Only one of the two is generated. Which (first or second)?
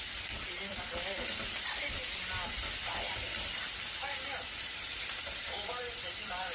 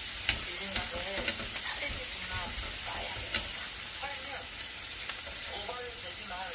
first